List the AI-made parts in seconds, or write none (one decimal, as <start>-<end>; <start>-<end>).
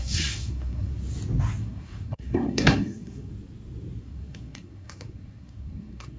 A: 0.0-0.9; 1.6-3.3; 4.0-6.2